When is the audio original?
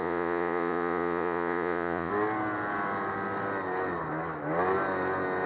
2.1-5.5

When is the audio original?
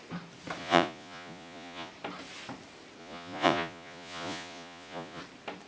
0.0-0.6; 1.9-3.0; 5.2-5.7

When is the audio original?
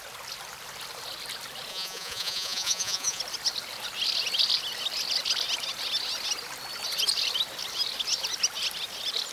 0.0-1.7; 3.2-9.3